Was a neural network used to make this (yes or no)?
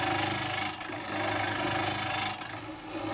no